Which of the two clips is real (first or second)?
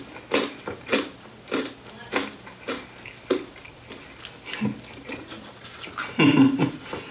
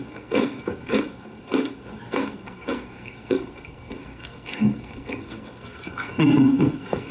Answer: first